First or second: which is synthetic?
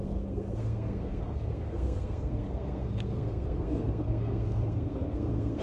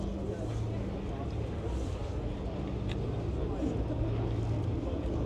first